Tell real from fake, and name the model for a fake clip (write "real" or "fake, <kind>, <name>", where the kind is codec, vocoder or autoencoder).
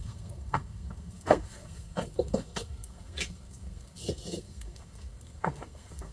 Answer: fake, codec, SNAC